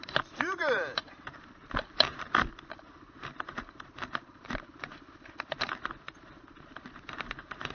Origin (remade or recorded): remade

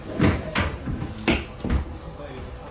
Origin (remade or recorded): recorded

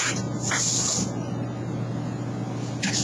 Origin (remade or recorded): recorded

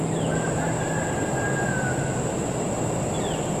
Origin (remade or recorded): recorded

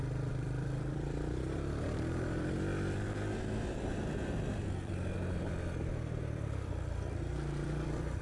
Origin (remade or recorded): remade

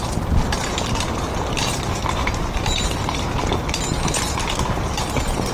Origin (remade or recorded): recorded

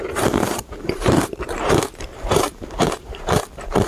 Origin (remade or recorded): remade